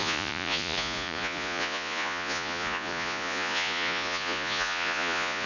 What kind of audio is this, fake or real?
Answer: fake